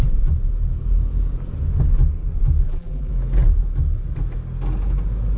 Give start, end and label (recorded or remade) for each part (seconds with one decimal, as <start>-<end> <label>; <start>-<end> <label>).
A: 0.0-2.6 recorded; 2.6-3.1 remade; 3.1-5.4 recorded